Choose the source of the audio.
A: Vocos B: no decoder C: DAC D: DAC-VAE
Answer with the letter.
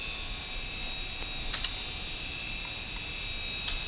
B